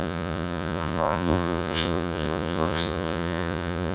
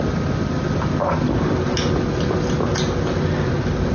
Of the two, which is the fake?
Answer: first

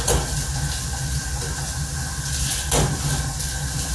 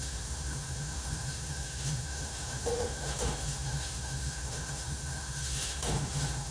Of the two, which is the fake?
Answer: second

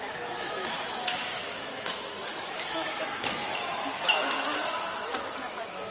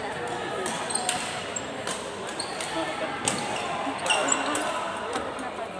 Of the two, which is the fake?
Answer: first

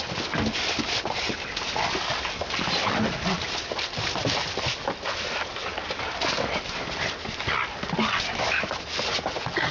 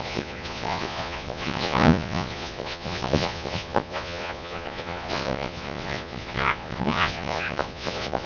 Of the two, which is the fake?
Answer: second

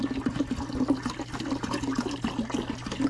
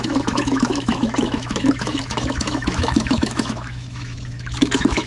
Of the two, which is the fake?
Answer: second